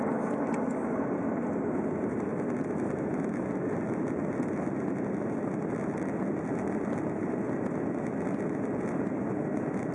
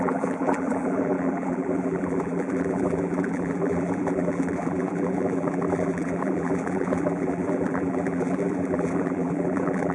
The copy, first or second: second